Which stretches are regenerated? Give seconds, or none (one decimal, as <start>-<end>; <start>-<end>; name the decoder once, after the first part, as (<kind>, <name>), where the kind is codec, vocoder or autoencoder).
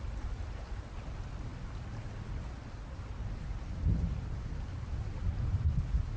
none